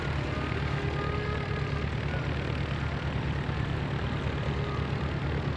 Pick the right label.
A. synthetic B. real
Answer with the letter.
B